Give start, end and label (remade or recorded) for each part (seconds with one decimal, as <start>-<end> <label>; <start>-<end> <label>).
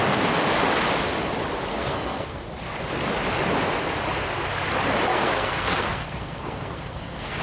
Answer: 0.0-1.7 recorded; 1.7-2.4 remade; 2.4-5.1 recorded; 5.1-7.4 remade